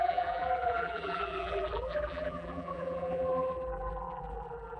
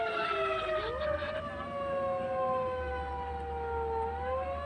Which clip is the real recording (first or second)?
second